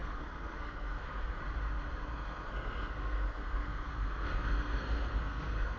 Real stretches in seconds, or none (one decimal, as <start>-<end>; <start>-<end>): 1.4-2.1